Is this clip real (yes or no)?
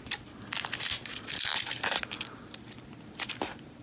yes